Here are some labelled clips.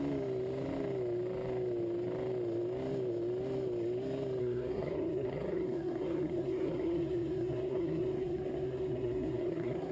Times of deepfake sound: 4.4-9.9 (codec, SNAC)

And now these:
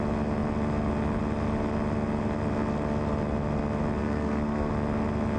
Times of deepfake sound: 4.0-4.7 (codec, SNAC)

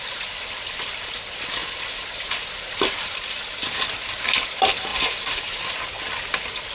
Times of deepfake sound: none

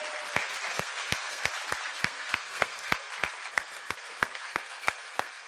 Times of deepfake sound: 0.7-1.5 (codec, SNAC); 1.9-3.1; 3.5-5.5

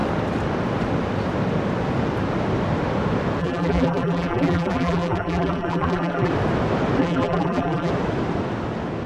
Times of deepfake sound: 3.4-6.3 (vocoder, BigVGAN v2); 7.0-7.9

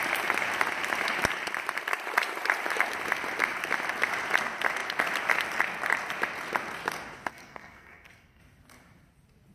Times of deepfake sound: 7.3-8.4 (codec, SNAC)

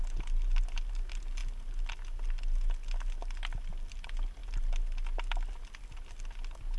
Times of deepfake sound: none